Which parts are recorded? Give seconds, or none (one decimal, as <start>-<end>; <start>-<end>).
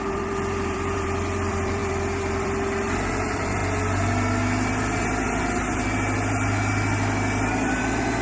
3.6-7.5